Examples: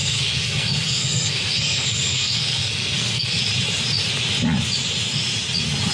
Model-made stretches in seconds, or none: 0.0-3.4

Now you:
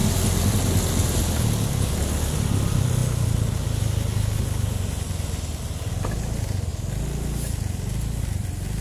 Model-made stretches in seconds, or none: none

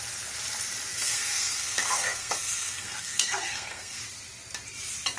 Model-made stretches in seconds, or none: 0.9-4.0

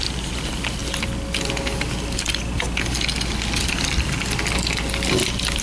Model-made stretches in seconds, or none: none

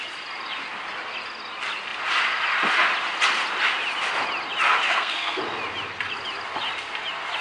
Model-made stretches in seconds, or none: 4.8-5.4

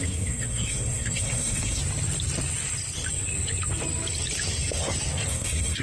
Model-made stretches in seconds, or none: 0.0-1.8; 5.3-5.8